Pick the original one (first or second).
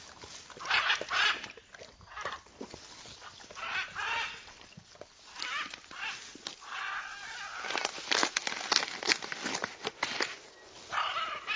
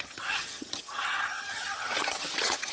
first